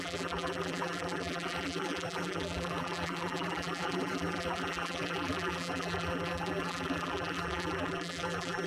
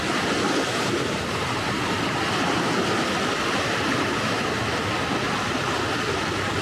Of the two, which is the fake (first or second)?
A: first